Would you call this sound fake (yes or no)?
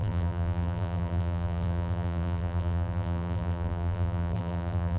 yes